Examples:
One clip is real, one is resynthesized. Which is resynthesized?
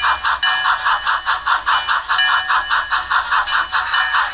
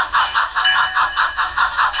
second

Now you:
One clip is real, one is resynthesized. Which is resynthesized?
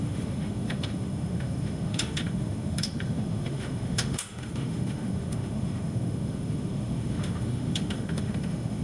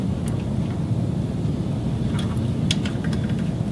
first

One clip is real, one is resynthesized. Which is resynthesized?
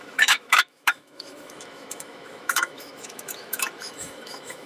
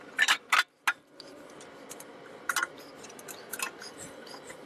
first